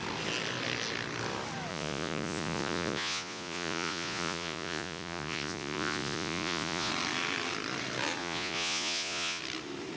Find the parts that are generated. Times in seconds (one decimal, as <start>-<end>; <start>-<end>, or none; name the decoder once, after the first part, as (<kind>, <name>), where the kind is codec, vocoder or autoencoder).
1.7-6.9 (vocoder, Vocos); 8.2-9.4